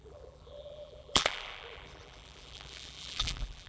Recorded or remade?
remade